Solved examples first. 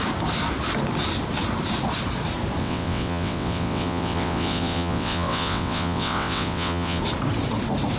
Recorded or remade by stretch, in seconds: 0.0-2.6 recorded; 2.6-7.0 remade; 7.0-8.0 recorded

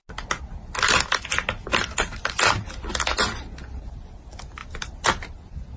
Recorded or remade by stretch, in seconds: 0.0-5.8 recorded

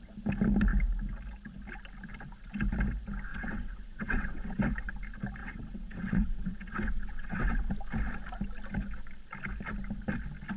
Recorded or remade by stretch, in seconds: 0.0-3.3 recorded; 3.3-4.6 remade; 4.6-5.4 recorded; 5.4-7.7 remade; 7.7-10.6 recorded

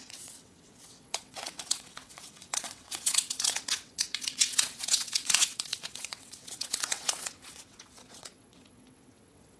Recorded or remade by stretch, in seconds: 0.0-9.6 remade

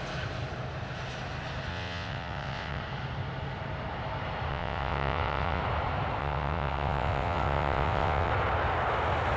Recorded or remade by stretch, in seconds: 0.0-1.7 recorded; 1.7-2.8 remade; 2.8-4.5 recorded; 4.5-5.6 remade; 5.6-6.2 recorded; 6.2-8.3 remade; 8.3-9.4 recorded

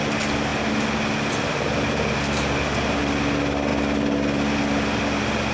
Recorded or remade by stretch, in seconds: 0.0-5.5 recorded

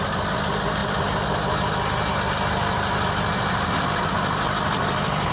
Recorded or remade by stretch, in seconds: 0.0-5.3 recorded

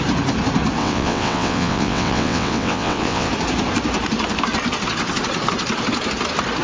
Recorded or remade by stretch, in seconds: 0.0-0.8 recorded; 0.8-3.3 remade; 3.3-6.6 recorded